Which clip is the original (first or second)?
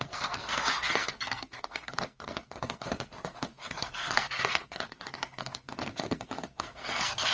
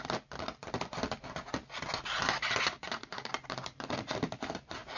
second